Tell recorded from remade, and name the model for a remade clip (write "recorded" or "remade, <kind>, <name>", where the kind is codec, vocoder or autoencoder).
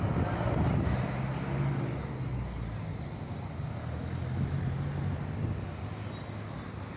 recorded